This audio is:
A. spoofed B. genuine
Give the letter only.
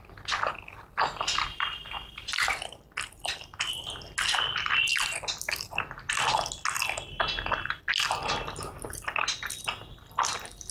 B